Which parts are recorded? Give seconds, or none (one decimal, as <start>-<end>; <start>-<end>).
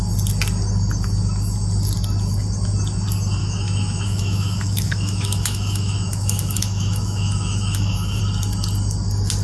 0.0-3.4; 8.2-9.4